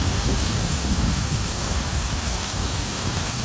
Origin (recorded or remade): remade